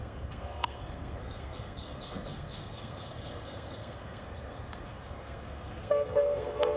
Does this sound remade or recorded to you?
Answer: remade